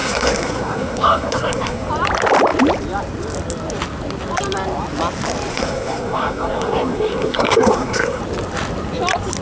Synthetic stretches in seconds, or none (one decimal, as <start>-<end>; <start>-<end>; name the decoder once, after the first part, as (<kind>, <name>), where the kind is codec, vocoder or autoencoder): 0.0-1.9 (codec, SNAC); 5.5-8.2